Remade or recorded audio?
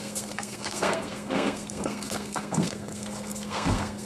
remade